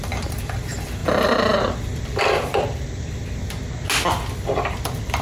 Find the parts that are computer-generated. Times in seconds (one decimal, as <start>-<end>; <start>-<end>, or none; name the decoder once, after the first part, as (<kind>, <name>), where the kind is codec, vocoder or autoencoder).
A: 0.0-1.0 (vocoder, BigVGAN v2); 2.2-3.2; 4.7-5.2